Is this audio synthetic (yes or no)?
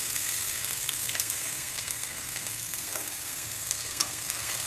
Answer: yes